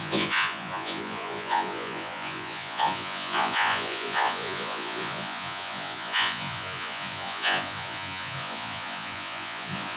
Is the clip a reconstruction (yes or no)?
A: yes